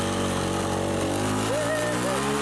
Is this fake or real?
real